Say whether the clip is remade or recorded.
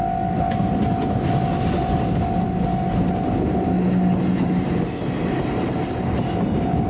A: recorded